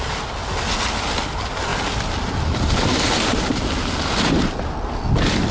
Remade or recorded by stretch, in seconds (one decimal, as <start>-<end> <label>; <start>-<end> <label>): 0.0-5.5 recorded